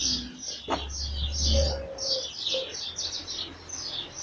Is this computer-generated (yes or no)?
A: no